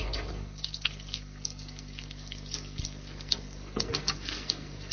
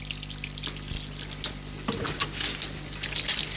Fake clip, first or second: first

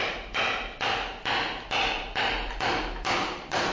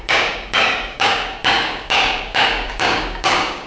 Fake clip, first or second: second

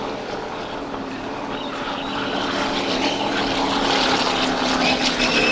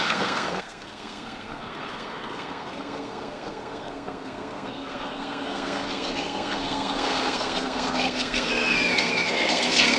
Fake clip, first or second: second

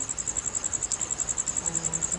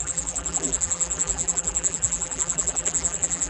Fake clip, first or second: second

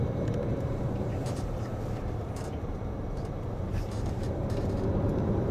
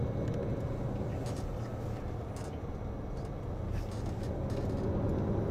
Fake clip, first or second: first